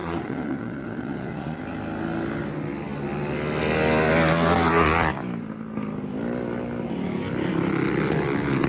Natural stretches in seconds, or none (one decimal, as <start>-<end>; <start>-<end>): 1.6-8.7